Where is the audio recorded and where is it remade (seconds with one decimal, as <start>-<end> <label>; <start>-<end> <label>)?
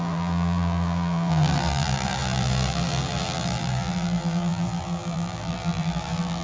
0.0-6.4 remade